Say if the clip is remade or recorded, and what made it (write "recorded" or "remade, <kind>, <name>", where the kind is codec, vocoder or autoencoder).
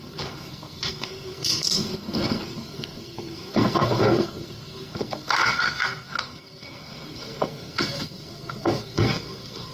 remade, codec, SNAC